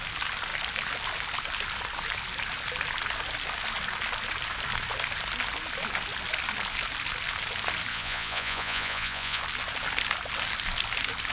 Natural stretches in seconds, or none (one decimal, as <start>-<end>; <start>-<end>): 0.0-7.9; 9.4-11.3